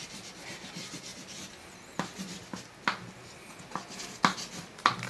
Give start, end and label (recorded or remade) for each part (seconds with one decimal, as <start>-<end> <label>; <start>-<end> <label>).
0.0-5.1 recorded